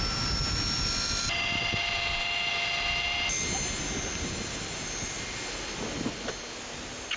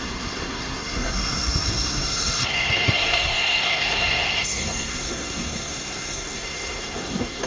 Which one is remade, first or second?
second